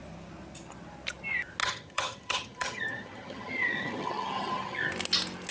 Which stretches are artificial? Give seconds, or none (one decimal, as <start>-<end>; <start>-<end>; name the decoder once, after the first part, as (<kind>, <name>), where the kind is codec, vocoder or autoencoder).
1.6-4.9 (vocoder, HiFi-GAN)